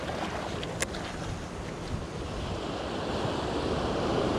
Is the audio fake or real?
real